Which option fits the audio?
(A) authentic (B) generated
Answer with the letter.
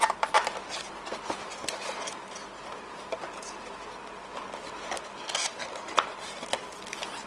A